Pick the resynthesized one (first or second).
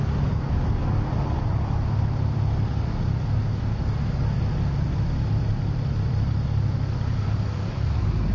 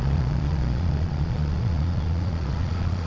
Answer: second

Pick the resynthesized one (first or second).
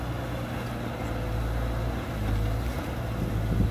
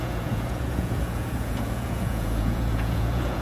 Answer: second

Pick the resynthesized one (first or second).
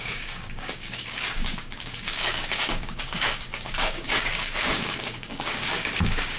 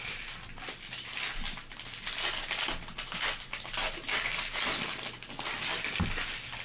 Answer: first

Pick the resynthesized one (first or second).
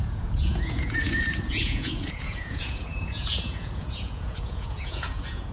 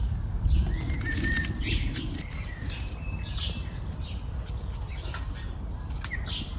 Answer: first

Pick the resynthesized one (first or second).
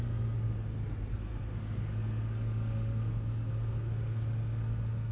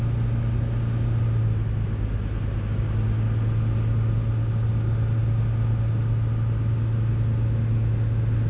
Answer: first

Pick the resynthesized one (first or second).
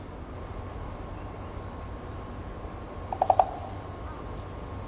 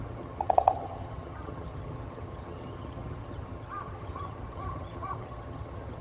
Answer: second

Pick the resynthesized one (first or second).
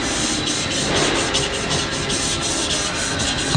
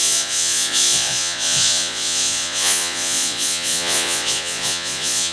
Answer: second